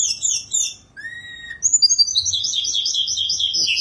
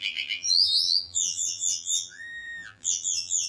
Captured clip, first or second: first